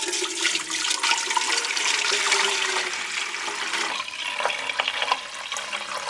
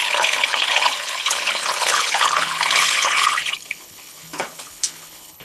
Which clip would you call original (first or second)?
first